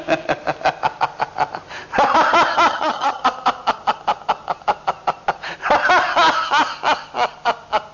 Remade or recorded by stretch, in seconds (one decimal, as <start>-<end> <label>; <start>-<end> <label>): 0.0-2.7 recorded; 2.7-3.2 remade; 3.2-7.9 recorded

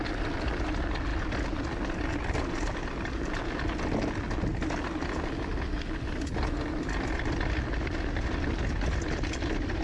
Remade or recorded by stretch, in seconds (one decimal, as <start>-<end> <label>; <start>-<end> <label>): 0.0-9.8 recorded

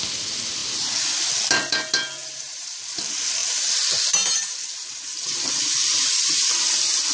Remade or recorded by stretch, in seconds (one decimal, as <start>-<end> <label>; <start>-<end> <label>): 0.0-2.2 recorded; 2.2-2.8 remade; 2.8-7.1 recorded

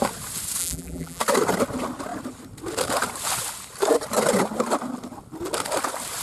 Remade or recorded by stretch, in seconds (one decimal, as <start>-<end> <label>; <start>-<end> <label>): 0.0-0.6 recorded; 0.6-1.2 remade; 1.2-6.2 recorded

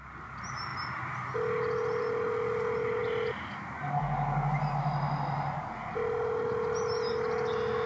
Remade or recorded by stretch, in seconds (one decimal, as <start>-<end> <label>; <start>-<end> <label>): 0.0-7.9 recorded

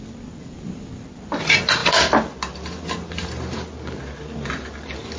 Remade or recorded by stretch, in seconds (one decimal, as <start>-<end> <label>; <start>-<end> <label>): 0.0-5.2 recorded

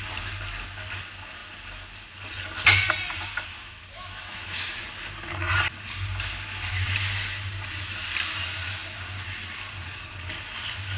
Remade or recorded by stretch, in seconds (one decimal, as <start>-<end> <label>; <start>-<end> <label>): 0.0-3.5 recorded; 3.5-4.8 remade; 4.8-11.0 recorded